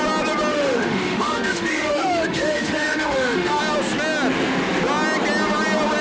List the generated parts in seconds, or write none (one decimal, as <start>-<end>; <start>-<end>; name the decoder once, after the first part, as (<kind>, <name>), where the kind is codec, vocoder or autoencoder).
0.5-3.6 (autoencoder, DAC-VAE)